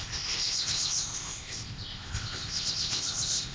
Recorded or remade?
remade